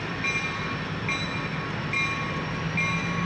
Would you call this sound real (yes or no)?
yes